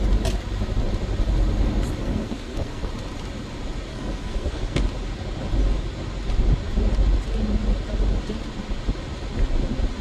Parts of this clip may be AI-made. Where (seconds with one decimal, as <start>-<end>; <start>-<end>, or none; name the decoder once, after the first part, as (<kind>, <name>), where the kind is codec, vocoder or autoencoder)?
2.0-2.9 (codec, SNAC); 3.9-4.8